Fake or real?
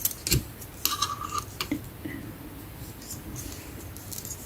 real